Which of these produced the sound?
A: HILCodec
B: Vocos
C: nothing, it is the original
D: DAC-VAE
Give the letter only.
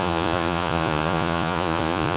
B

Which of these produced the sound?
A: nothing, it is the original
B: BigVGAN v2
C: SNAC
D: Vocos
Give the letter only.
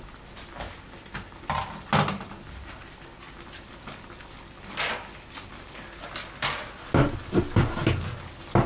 A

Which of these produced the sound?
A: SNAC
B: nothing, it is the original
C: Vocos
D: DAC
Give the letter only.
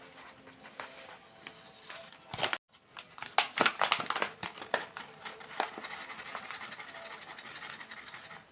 B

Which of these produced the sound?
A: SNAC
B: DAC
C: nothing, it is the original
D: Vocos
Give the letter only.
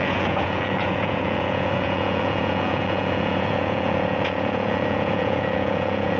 D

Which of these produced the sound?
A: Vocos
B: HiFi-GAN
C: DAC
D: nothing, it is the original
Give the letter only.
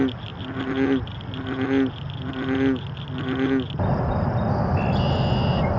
D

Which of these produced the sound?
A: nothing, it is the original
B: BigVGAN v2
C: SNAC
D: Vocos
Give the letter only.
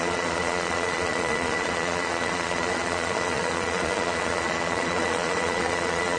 D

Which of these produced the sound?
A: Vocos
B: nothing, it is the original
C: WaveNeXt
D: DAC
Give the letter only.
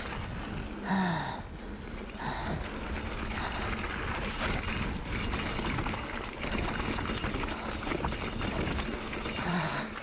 B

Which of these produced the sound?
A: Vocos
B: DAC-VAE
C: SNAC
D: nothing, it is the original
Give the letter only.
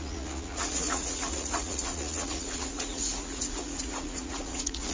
A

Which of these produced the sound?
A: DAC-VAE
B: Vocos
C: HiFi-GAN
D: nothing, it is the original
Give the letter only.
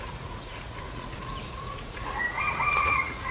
B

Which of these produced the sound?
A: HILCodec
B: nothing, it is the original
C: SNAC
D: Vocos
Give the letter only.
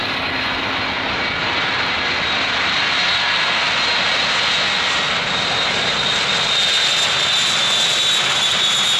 B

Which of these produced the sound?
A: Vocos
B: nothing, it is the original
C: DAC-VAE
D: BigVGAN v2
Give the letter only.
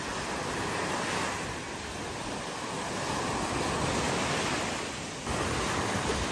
B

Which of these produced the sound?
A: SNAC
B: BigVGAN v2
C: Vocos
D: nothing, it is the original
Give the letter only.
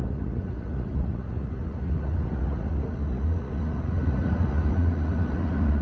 C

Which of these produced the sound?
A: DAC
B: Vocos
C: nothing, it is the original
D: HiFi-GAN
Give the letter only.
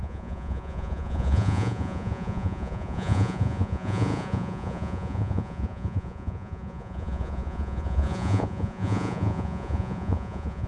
B